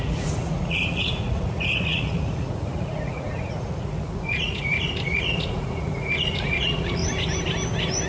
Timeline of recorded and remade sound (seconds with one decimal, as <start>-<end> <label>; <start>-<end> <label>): 0.0-7.0 remade; 7.0-8.1 recorded